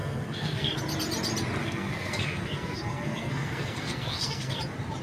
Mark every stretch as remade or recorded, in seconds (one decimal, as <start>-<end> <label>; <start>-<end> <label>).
0.0-0.7 remade; 0.7-1.6 recorded; 1.6-4.6 remade; 4.6-5.0 recorded